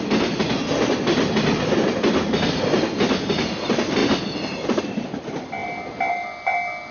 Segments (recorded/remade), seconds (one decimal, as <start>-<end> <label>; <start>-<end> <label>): 0.0-6.9 recorded